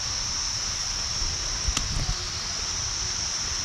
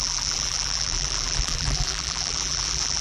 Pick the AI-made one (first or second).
second